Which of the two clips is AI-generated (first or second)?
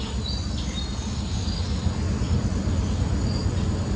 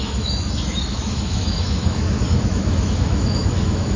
second